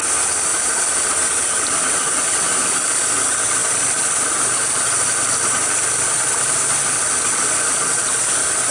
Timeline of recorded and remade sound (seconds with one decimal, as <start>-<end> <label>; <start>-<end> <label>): 0.0-8.7 recorded